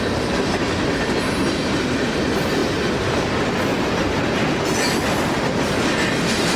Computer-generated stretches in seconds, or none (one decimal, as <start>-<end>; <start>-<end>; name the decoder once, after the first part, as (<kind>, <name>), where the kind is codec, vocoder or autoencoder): none